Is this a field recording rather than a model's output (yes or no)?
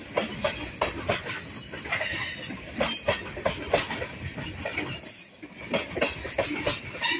yes